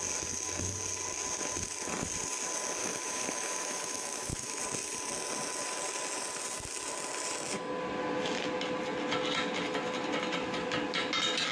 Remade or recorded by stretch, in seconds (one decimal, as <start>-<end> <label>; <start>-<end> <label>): 0.0-2.8 recorded; 2.8-4.6 remade; 4.6-11.5 recorded